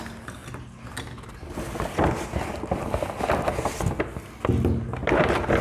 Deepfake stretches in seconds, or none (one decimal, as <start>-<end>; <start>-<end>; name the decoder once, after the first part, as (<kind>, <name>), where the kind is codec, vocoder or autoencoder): none

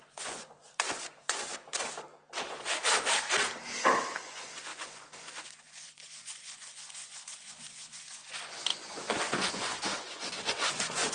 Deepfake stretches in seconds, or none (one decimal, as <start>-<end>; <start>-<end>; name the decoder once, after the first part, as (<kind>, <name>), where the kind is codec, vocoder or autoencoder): 0.0-1.5 (vocoder, Vocos); 4.1-11.1